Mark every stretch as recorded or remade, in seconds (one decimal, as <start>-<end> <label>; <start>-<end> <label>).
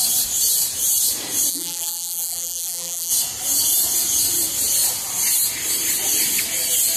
0.0-1.5 recorded; 1.5-3.1 remade; 3.1-7.0 recorded